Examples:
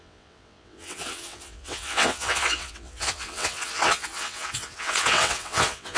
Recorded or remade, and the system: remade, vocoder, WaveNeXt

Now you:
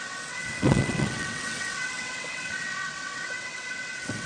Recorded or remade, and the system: remade, vocoder, WaveNeXt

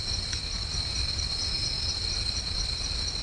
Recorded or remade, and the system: recorded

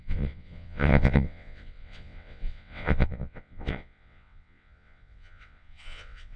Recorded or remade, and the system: remade, vocoder, WaveNeXt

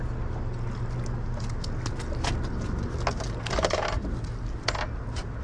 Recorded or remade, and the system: recorded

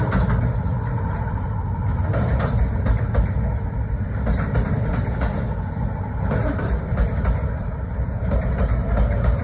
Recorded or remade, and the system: recorded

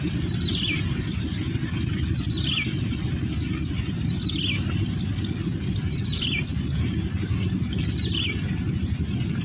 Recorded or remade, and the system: recorded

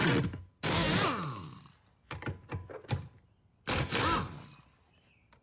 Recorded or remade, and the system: recorded